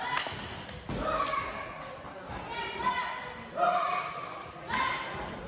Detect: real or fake real